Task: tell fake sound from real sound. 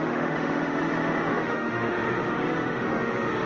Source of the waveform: fake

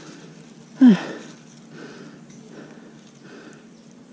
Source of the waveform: real